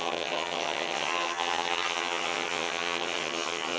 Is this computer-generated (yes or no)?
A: yes